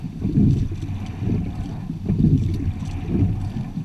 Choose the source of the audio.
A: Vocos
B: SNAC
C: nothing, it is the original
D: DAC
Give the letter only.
C